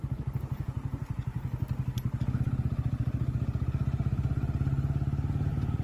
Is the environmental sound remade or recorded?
recorded